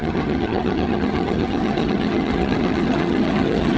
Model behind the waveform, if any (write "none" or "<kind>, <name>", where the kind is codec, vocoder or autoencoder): vocoder, HiFi-GAN